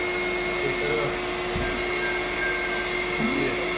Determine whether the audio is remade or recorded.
recorded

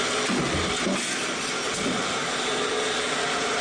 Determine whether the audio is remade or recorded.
recorded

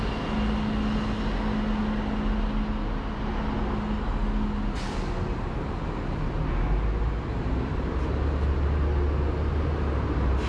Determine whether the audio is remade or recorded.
recorded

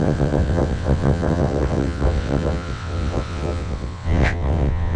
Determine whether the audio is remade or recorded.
remade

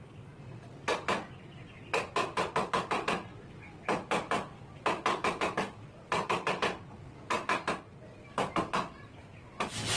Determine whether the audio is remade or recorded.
recorded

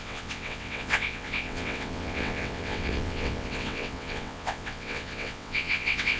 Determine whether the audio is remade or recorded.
remade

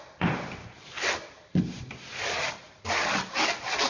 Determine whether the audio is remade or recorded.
recorded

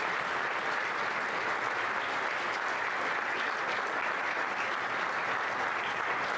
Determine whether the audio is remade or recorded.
recorded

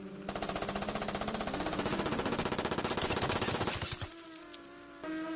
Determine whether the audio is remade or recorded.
recorded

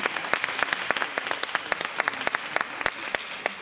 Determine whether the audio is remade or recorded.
recorded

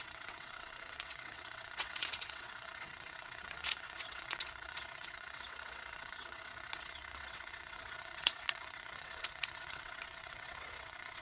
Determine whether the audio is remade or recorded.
remade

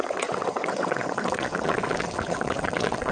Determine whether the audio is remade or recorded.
remade